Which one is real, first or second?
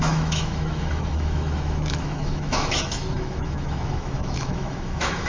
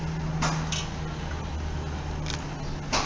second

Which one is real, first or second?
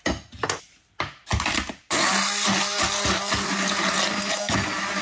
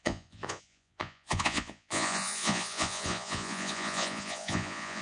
first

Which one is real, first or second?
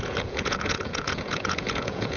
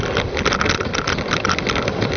second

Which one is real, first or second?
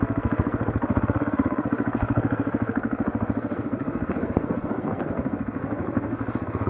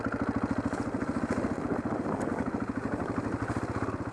second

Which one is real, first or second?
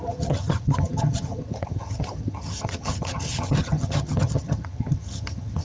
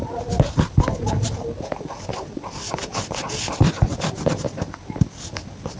second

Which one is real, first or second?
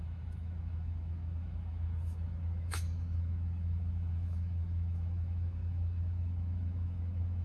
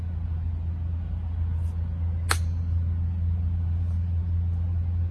second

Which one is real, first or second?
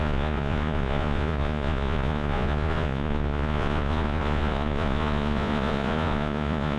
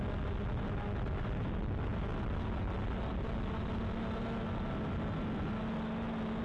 second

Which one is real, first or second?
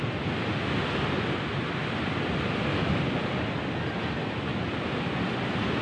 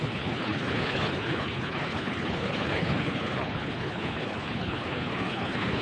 first